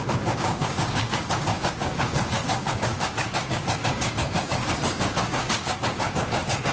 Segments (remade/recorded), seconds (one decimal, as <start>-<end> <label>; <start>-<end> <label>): 0.0-6.7 remade

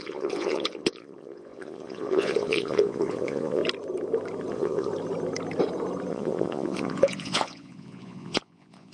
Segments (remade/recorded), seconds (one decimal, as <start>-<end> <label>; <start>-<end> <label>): 0.0-3.6 remade; 3.6-4.5 recorded; 4.5-4.9 remade; 4.9-6.1 recorded; 6.1-8.9 remade

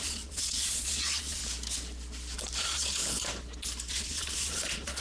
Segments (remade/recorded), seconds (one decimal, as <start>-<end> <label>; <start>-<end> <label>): 0.0-1.4 remade; 1.4-2.6 recorded; 2.6-3.0 remade; 3.0-3.9 recorded; 3.9-5.0 remade

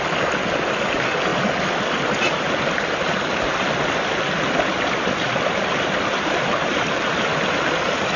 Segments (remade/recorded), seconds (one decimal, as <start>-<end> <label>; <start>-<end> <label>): 0.0-8.2 recorded